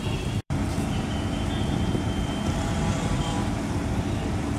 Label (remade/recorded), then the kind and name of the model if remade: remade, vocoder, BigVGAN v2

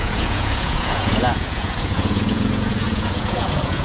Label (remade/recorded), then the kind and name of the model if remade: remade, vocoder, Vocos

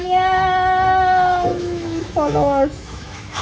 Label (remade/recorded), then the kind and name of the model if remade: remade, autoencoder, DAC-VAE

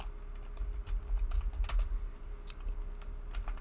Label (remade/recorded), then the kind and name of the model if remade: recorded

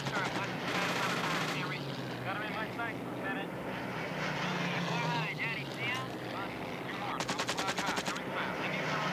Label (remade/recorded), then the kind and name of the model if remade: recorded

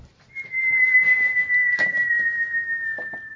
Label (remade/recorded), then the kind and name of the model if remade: recorded